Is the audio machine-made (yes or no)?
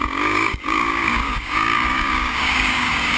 yes